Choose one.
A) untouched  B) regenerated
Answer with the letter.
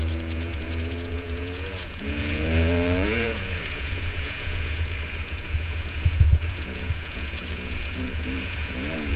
B